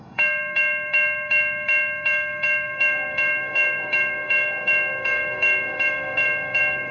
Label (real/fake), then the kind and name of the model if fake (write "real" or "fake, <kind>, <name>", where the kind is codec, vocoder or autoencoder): fake, codec, DAC